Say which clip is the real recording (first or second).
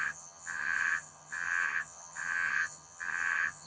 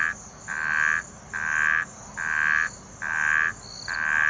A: second